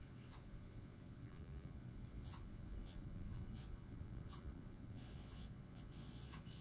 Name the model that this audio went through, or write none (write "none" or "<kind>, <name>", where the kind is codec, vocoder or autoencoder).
vocoder, Vocos